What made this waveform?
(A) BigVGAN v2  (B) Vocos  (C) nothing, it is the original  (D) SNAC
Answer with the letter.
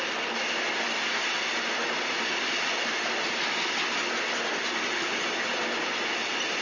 C